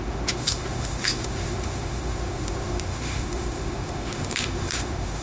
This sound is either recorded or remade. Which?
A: remade